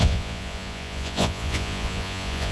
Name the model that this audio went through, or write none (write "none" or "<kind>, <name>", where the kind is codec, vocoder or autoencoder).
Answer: vocoder, Vocos